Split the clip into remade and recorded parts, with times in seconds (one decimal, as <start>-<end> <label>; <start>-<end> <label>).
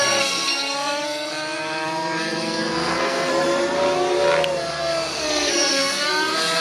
0.0-3.3 remade; 3.3-4.8 recorded; 4.8-6.6 remade